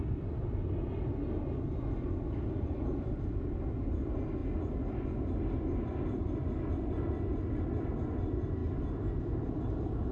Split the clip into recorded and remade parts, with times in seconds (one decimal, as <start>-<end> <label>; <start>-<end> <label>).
0.0-10.1 recorded